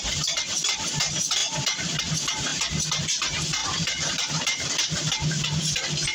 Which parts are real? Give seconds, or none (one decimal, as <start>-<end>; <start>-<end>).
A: 0.0-3.6; 4.3-6.1